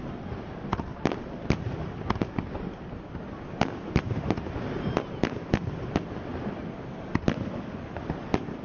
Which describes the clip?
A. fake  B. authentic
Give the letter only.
B